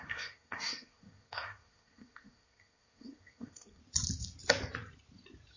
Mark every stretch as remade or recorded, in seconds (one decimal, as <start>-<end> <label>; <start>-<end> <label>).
0.0-3.8 remade; 3.8-5.6 recorded